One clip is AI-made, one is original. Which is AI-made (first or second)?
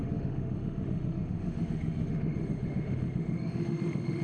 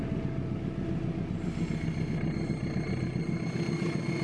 first